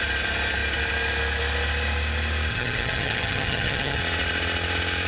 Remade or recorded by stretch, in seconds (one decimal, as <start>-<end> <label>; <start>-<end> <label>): 0.0-2.5 recorded; 2.5-4.0 remade; 4.0-5.1 recorded